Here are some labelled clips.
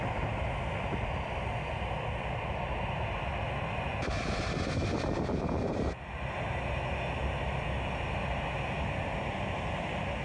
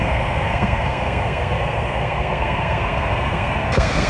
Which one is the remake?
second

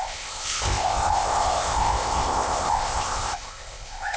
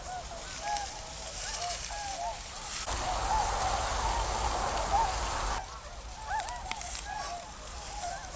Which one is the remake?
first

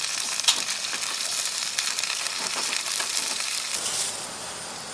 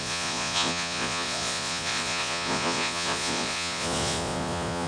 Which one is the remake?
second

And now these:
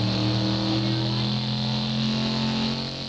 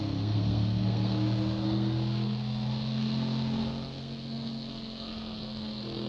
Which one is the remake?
second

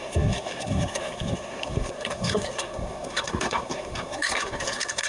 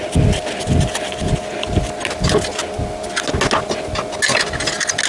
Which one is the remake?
first